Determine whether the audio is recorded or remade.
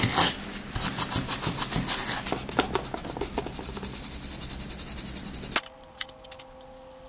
recorded